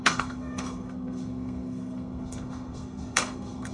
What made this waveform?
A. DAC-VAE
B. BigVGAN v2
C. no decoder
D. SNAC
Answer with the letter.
D